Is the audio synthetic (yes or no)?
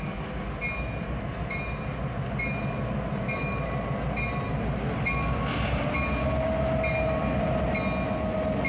no